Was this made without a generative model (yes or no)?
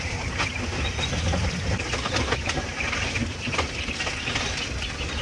yes